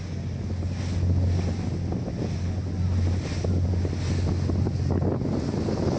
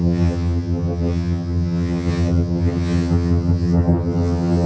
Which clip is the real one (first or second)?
first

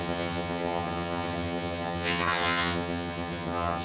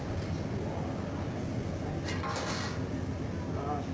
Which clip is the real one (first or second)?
second